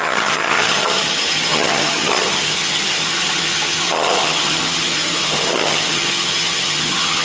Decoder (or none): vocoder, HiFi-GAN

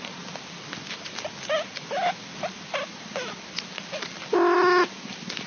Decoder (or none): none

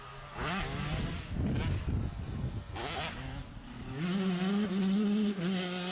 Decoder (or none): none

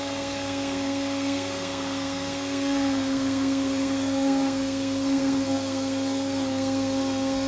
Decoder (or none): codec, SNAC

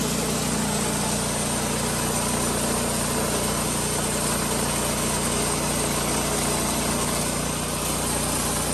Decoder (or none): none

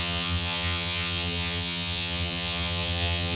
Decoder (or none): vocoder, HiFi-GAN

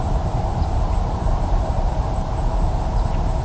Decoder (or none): vocoder, BigVGAN v2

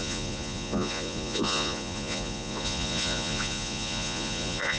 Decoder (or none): vocoder, Vocos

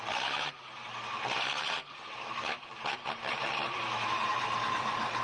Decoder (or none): vocoder, BigVGAN v2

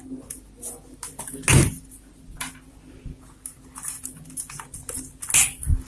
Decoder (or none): none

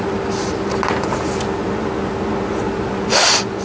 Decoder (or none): none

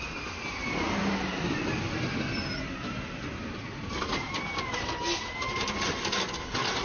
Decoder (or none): none